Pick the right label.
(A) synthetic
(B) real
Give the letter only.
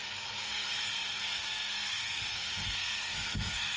A